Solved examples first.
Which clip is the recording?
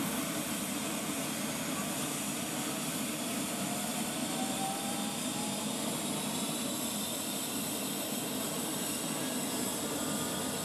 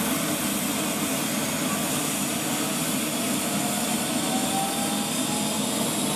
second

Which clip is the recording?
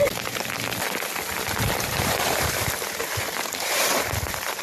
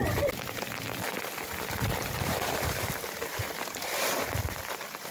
first